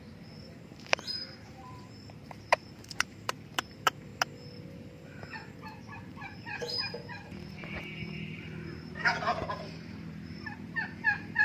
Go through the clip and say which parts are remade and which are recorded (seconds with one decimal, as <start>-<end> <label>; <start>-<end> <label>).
0.0-4.1 remade; 4.1-5.8 recorded; 5.8-11.4 remade